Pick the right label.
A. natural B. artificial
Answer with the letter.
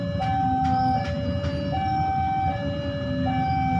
A